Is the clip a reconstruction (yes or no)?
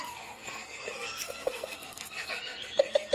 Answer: yes